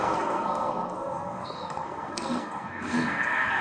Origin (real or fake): fake